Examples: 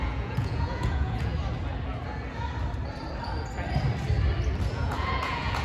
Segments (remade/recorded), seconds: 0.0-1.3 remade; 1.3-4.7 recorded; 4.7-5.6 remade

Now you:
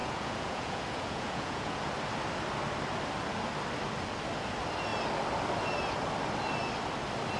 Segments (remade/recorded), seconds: 0.0-1.9 remade; 1.9-7.4 recorded

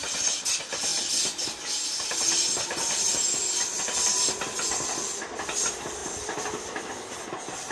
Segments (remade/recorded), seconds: 0.0-7.7 recorded

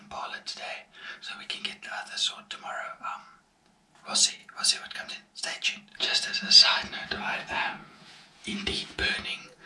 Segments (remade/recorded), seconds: 0.0-4.4 recorded; 4.4-5.1 remade; 5.1-5.9 recorded; 5.9-9.7 remade

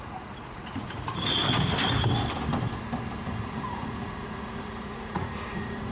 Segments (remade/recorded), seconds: 0.0-1.4 remade; 1.4-3.4 recorded; 3.4-5.9 remade

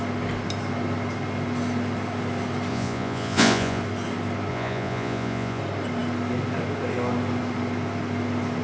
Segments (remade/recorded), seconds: 0.0-2.7 recorded; 2.7-3.8 remade; 3.8-4.5 recorded; 4.5-5.6 remade; 5.6-8.6 recorded

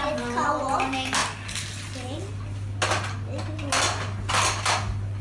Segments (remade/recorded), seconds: 0.0-5.2 recorded